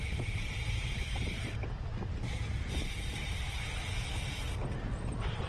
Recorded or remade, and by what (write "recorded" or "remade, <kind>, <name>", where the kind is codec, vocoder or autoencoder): remade, vocoder, BigVGAN v2